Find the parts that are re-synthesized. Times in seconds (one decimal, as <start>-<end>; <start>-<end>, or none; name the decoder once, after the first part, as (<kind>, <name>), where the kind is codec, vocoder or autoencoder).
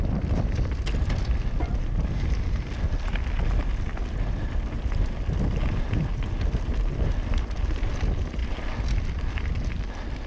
none